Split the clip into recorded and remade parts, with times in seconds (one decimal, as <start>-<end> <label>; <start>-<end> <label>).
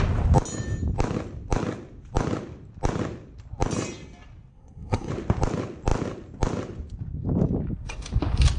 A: 0.0-4.5 recorded; 4.5-5.1 remade; 5.1-8.6 recorded